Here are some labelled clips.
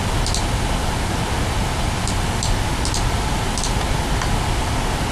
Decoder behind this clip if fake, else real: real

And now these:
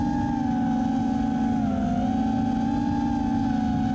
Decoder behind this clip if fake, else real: real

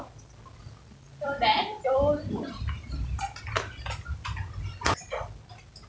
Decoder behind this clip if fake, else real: real